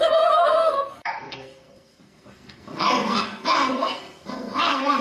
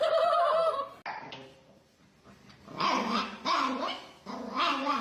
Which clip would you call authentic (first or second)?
second